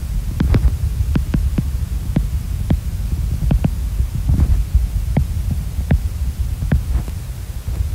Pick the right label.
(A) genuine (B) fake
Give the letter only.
A